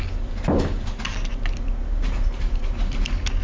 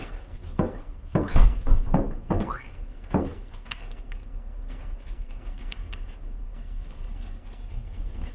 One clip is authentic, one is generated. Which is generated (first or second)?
second